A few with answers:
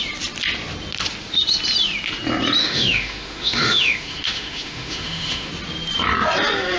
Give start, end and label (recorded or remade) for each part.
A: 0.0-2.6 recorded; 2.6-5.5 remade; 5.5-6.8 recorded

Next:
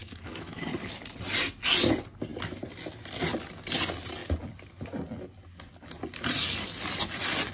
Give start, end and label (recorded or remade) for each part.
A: 0.0-0.6 remade; 0.6-7.5 recorded